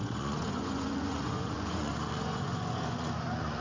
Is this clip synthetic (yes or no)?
yes